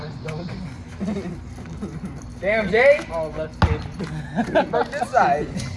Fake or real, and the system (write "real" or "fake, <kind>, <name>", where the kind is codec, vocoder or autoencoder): real